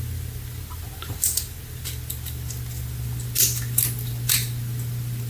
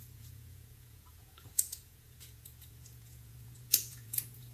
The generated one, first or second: second